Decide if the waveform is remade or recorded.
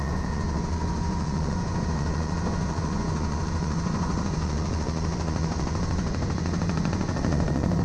remade